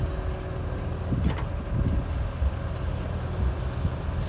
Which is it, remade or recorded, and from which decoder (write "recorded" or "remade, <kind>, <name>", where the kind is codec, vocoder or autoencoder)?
recorded